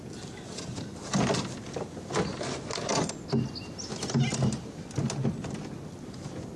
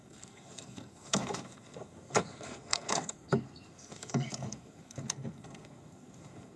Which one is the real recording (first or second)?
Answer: first